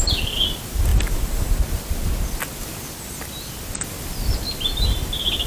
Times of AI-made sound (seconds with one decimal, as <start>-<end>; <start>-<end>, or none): 0.9-1.6